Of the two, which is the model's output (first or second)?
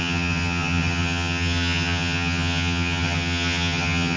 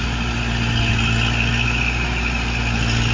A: first